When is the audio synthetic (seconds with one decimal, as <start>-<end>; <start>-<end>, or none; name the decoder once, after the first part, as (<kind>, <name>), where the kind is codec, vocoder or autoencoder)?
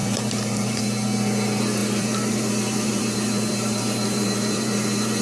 0.0-0.8 (vocoder, BigVGAN v2); 1.8-5.2